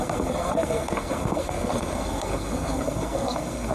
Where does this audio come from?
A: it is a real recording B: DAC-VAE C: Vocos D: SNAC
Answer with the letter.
D